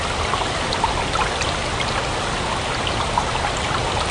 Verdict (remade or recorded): recorded